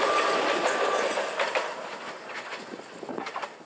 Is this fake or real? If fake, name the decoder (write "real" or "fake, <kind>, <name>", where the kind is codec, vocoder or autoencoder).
real